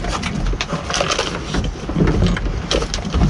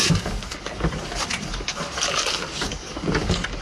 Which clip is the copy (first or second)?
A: second